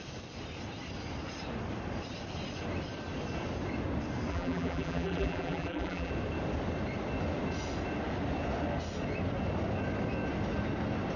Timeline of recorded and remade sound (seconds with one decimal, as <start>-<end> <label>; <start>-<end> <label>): 0.0-4.3 recorded; 4.3-6.1 remade; 6.1-11.2 recorded